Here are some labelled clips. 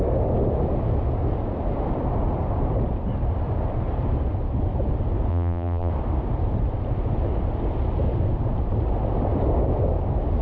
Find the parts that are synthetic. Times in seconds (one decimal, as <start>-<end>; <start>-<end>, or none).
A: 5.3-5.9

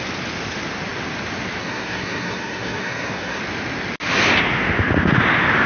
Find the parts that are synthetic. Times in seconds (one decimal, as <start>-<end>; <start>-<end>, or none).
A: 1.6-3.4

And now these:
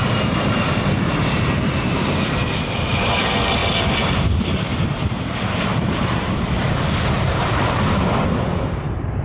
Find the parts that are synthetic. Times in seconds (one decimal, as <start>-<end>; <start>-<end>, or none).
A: 0.0-9.2

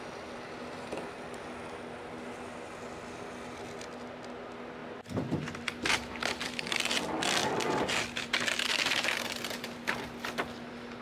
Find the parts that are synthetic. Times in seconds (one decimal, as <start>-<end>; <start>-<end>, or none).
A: 4.8-6.7; 7.4-9.1

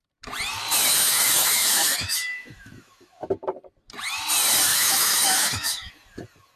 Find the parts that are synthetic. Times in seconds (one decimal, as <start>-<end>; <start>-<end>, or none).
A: 0.9-3.3; 4.7-5.9

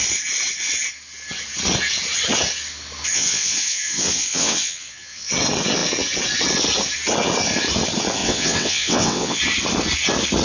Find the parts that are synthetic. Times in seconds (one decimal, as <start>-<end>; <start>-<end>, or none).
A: 3.1-5.3; 8.2-9.4

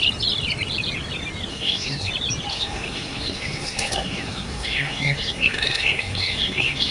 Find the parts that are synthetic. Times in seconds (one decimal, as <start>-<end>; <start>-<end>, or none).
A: 1.5-2.1; 2.5-6.9

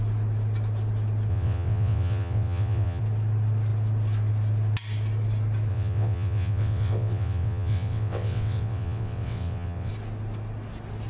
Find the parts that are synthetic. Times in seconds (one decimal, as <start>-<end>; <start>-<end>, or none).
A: 1.3-3.0; 5.7-9.9